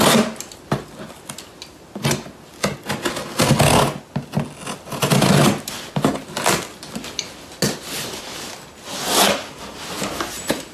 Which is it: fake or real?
real